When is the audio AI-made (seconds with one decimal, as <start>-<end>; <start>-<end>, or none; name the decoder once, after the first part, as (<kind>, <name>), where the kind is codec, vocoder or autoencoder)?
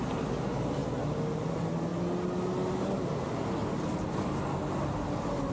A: none